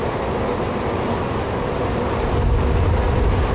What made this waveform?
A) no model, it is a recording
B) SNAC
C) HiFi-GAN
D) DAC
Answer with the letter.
A